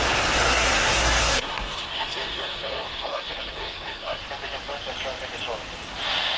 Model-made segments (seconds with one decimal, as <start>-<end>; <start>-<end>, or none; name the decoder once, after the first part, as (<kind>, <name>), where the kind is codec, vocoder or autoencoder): 0.4-4.2 (codec, SNAC)